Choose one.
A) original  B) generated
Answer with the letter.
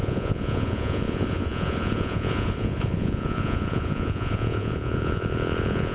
B